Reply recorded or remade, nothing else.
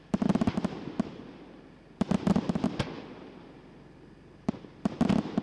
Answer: remade